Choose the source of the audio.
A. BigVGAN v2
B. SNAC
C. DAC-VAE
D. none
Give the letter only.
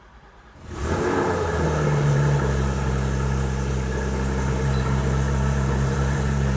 A